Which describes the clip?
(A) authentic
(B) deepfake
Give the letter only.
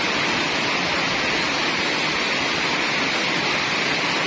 A